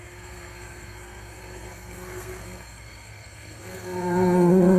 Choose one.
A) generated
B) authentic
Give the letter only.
A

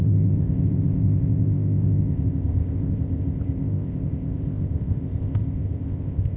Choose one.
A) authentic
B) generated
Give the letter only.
B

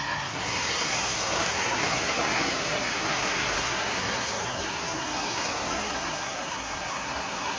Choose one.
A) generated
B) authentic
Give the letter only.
A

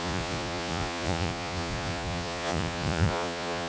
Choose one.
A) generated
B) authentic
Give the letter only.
A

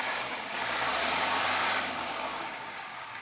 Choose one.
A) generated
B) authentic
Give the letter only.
A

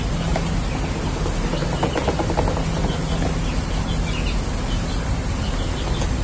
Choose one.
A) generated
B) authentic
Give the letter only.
B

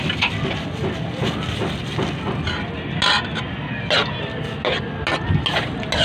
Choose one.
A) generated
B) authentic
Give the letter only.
B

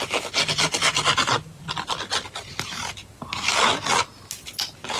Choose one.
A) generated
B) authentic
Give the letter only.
B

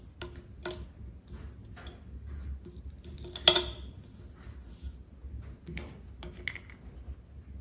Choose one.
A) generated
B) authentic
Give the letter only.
B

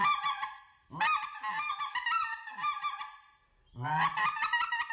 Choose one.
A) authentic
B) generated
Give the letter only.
A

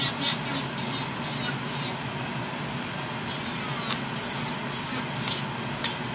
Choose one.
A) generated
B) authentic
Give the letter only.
B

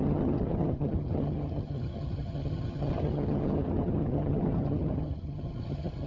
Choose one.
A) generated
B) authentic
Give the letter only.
A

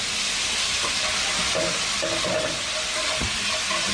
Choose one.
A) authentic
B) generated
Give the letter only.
A